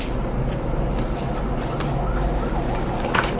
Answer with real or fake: real